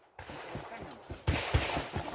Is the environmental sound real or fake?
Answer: real